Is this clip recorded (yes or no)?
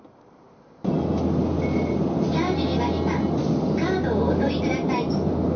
yes